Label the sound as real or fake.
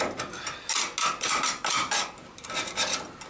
real